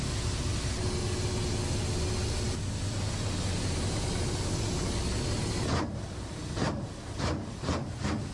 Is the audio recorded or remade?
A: recorded